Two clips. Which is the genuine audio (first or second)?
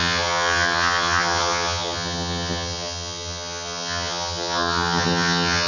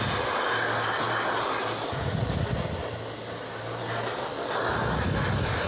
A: second